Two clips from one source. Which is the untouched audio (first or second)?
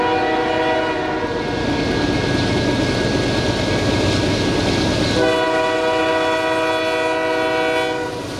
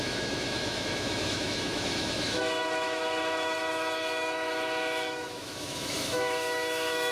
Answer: first